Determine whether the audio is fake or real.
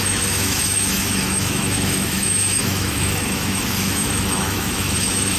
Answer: fake